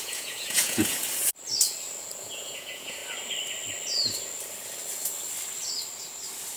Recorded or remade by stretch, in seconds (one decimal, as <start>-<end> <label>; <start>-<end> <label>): 0.0-1.0 remade; 1.0-2.2 recorded; 2.2-3.0 remade; 3.0-6.6 recorded

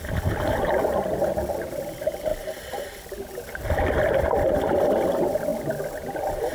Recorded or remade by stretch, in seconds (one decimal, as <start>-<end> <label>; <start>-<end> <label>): 0.0-2.3 remade; 2.3-4.5 recorded; 4.5-5.5 remade; 5.5-6.5 recorded

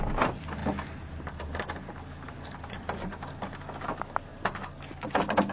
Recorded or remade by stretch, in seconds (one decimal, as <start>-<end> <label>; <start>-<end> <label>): 0.0-5.5 recorded

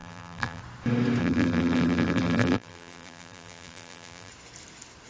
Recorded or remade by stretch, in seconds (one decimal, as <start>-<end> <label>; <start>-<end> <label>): 0.0-0.6 remade; 0.6-1.2 recorded; 1.2-4.3 remade; 4.3-5.1 recorded

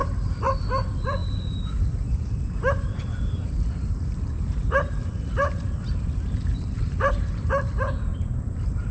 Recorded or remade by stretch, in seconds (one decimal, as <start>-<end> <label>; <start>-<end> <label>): 0.0-0.5 remade; 0.5-1.2 recorded; 1.2-5.0 remade; 5.0-6.5 recorded; 6.5-7.5 remade; 7.5-8.1 recorded; 8.1-8.9 remade